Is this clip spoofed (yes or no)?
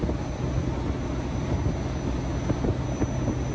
no